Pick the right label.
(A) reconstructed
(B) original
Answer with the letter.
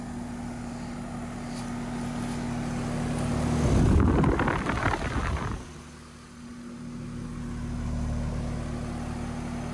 B